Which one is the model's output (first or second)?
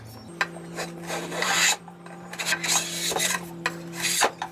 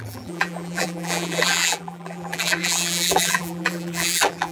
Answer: second